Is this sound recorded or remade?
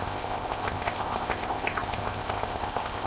remade